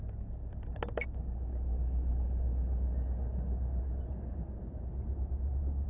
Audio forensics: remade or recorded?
recorded